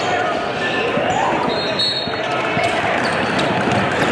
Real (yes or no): yes